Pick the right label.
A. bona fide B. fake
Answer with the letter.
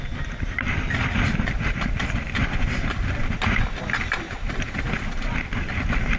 B